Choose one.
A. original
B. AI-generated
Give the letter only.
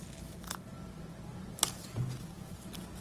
A